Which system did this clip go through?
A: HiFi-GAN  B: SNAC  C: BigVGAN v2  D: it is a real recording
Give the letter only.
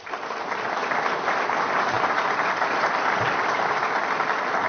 D